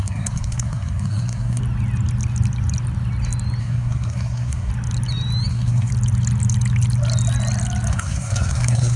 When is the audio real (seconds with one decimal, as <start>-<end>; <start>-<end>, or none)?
1.6-3.6; 4.7-5.5; 5.9-7.9